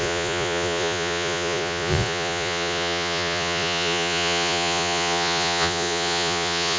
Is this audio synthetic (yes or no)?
yes